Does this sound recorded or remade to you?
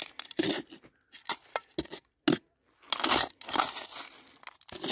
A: recorded